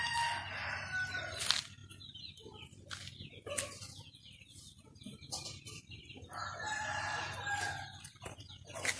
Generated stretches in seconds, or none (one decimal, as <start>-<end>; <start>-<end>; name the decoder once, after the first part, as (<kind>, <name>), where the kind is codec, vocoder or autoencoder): none